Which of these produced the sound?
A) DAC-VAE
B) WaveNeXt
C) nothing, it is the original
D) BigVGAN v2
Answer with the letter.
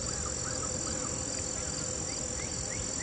C